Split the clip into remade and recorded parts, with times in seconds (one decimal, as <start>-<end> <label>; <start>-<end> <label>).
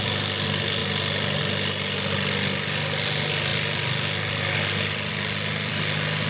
0.0-6.3 recorded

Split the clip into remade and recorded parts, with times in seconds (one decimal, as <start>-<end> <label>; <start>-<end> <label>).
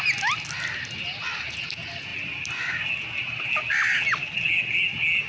0.0-5.3 recorded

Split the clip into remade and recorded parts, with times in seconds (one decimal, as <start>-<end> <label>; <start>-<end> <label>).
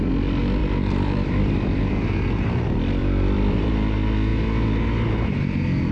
0.0-0.6 recorded; 0.6-1.8 remade; 1.8-3.0 recorded; 3.0-3.7 remade; 3.7-5.9 recorded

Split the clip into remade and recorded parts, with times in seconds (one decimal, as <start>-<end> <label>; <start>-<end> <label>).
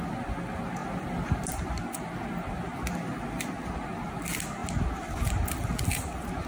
0.0-0.8 recorded; 0.8-1.5 remade; 1.5-6.5 recorded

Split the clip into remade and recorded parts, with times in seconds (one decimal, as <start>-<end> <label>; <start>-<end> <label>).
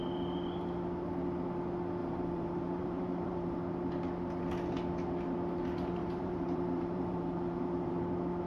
0.0-2.0 recorded; 2.0-3.6 remade; 3.6-6.0 recorded; 6.0-8.0 remade; 8.0-8.5 recorded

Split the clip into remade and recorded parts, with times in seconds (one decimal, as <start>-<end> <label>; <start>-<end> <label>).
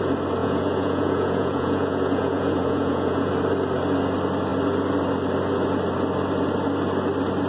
0.0-0.4 recorded; 0.4-3.3 remade; 3.3-7.5 recorded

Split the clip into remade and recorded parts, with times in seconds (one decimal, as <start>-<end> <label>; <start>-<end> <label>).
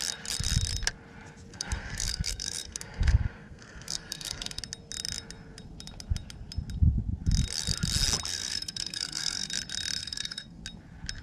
0.0-1.5 recorded; 1.5-4.6 remade; 4.6-8.3 recorded; 8.3-9.5 remade; 9.5-10.0 recorded; 10.0-10.6 remade; 10.6-11.2 recorded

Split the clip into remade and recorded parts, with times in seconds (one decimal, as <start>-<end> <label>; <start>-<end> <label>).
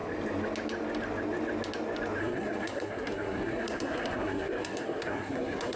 0.0-2.2 recorded; 2.2-5.8 remade